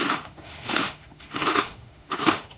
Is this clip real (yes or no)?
no